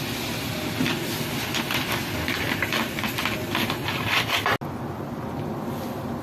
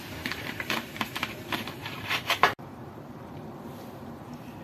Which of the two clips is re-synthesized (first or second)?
second